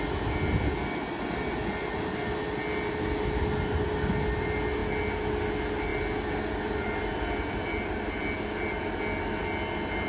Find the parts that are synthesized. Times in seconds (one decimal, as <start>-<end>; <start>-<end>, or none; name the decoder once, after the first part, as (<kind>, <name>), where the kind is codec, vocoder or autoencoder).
none